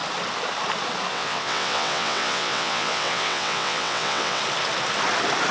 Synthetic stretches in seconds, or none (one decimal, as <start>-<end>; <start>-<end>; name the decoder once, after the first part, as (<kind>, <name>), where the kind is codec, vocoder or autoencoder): 1.1-4.4 (vocoder, WaveNeXt)